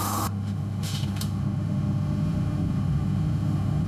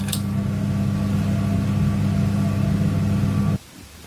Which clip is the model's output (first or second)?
first